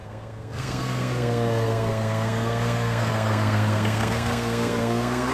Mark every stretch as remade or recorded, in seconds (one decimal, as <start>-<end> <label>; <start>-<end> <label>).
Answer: 0.0-5.3 remade